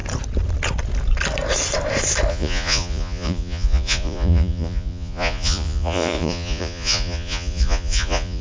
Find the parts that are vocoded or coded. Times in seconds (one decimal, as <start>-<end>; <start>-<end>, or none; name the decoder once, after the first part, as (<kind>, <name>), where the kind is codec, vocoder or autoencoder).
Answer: 2.3-8.4 (vocoder, Vocos)